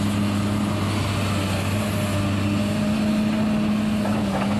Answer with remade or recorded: recorded